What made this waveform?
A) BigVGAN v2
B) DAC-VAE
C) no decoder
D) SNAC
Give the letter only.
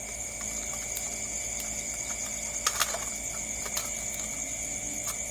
C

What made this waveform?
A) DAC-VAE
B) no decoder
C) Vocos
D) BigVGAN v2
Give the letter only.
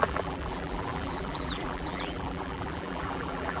D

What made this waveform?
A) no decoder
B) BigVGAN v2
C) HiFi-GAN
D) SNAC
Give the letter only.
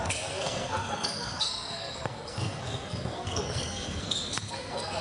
D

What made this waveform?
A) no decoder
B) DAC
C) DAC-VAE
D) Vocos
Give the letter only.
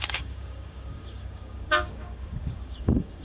B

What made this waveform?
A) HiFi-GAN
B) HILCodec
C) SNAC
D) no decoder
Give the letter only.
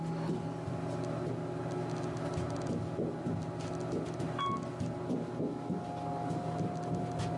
D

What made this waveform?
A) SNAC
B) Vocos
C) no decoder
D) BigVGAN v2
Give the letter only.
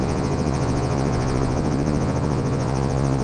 B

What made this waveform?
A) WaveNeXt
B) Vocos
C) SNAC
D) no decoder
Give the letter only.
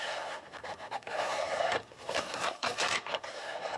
C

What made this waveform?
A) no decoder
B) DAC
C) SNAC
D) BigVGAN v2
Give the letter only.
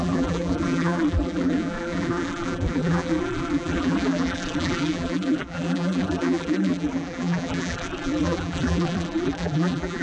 D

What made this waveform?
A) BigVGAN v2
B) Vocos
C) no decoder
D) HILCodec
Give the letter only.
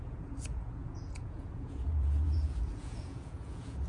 B